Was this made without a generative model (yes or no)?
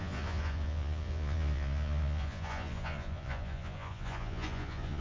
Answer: no